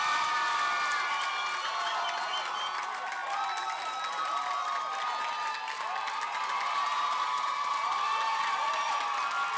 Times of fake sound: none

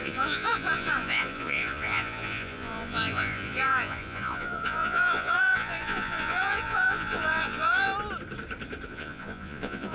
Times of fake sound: 0.0-7.9 (vocoder, Vocos); 8.9-9.9

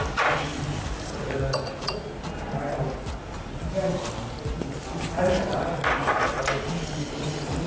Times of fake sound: none

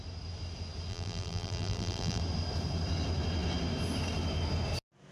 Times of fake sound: 0.9-2.2 (vocoder, BigVGAN v2)

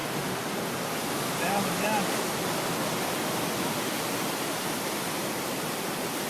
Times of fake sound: none

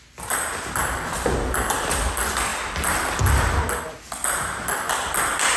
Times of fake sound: 0.8-2.1 (vocoder, BigVGAN v2)

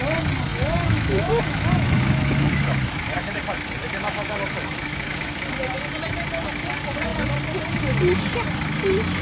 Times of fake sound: 0.5-3.4 (autoencoder, DAC-VAE); 3.8-5.4

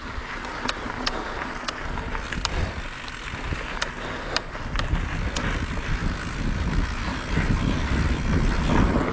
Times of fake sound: none